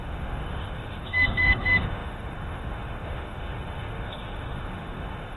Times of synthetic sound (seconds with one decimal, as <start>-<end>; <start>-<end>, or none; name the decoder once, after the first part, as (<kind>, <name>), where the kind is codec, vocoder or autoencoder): 0.0-5.4 (autoencoder, DAC-VAE)